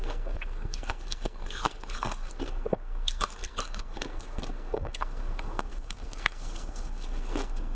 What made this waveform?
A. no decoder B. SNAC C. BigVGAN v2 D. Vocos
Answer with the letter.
B